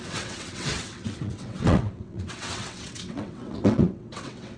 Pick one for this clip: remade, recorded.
remade